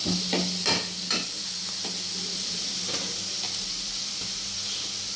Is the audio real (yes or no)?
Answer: yes